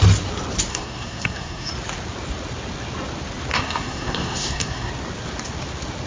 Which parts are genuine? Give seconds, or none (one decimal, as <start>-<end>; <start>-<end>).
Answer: 0.0-0.7; 1.7-3.5; 4.9-6.1